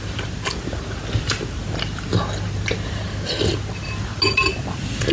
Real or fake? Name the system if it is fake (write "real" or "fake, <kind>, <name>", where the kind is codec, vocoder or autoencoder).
real